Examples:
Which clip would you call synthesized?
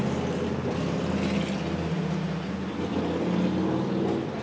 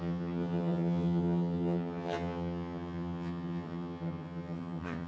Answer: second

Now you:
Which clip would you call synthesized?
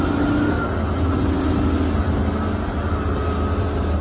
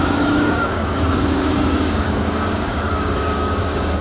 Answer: second